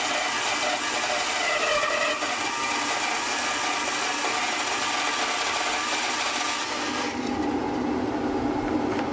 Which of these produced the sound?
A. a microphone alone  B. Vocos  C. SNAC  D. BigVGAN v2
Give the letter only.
A